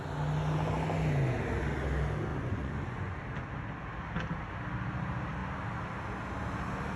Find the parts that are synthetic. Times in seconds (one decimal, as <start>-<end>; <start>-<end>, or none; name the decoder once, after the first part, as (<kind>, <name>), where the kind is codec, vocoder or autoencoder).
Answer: 2.3-3.2 (vocoder, Vocos)

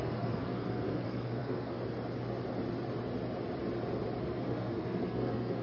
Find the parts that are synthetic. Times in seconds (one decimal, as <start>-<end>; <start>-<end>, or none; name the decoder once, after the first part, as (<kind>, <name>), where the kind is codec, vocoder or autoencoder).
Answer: 0.0-1.8 (codec, SNAC); 4.2-5.6

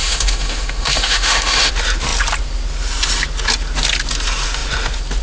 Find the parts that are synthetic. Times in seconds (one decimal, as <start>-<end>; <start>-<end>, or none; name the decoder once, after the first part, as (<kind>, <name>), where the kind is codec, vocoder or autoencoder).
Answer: 0.0-1.7 (autoencoder, DAC-VAE)

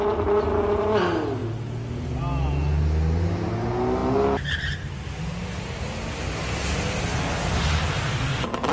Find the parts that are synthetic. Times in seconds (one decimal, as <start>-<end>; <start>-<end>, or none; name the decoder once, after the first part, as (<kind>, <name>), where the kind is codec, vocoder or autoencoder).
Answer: none

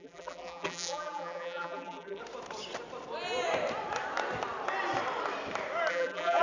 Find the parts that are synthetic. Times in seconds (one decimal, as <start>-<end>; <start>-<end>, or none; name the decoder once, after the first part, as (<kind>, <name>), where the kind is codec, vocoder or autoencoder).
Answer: 0.0-2.2 (vocoder, BigVGAN v2); 5.9-6.4

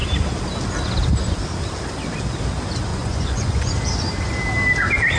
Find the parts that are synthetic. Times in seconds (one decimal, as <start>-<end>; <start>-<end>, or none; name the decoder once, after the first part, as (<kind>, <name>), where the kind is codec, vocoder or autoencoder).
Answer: 2.9-3.7 (vocoder, Vocos)